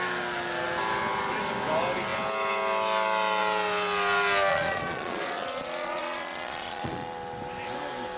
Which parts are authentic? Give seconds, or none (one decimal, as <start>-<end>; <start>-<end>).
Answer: 0.0-4.5; 6.9-8.2